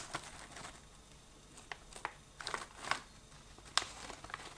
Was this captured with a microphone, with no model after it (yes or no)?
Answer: yes